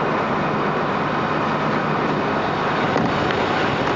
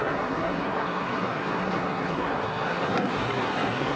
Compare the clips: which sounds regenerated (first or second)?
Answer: second